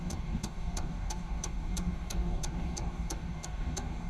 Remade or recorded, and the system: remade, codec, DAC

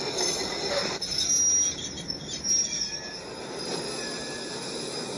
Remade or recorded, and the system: recorded